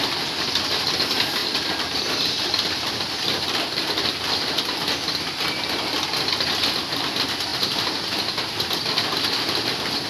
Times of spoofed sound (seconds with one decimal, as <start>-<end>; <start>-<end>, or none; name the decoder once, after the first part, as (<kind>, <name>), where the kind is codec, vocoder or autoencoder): 1.4-4.2 (vocoder, BigVGAN v2)